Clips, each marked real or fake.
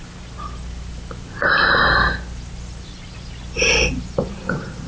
real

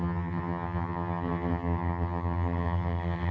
fake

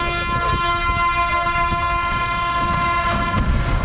real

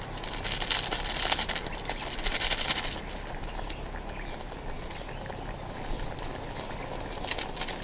real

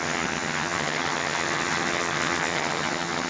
fake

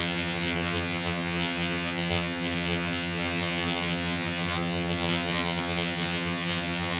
fake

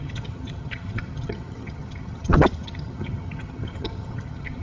fake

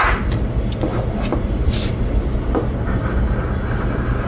real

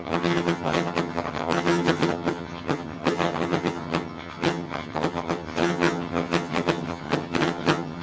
fake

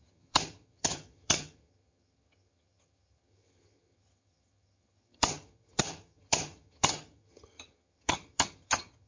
fake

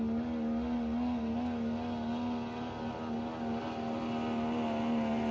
real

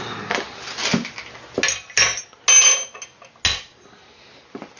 real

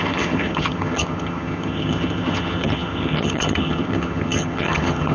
fake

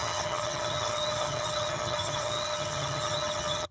fake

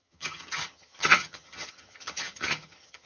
fake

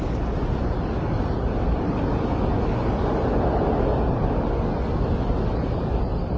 real